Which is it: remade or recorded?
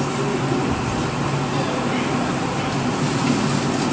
recorded